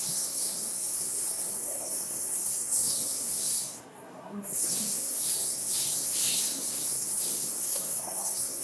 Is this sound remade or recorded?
remade